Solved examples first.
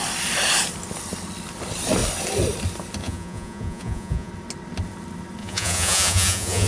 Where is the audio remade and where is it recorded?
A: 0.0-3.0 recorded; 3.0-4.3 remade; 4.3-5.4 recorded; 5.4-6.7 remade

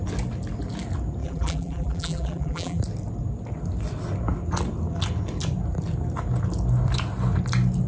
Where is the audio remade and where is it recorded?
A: 0.0-1.2 recorded; 1.2-2.8 remade; 2.8-7.9 recorded